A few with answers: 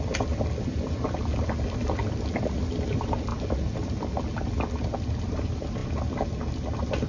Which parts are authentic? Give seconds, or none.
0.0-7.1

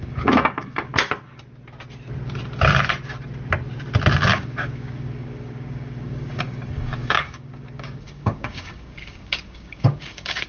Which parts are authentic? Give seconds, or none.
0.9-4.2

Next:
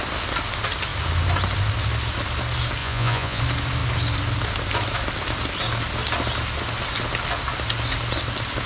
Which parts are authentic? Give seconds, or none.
0.0-2.8; 3.4-8.7

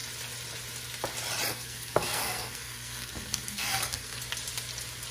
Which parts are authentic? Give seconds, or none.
0.0-1.5; 4.2-5.1

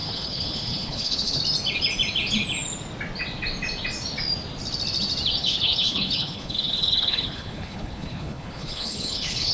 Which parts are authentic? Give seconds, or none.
1.4-5.4

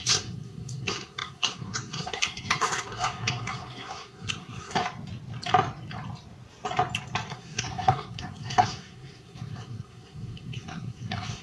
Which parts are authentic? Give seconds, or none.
4.8-7.3

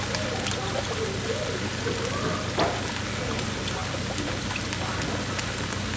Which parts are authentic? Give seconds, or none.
0.0-6.0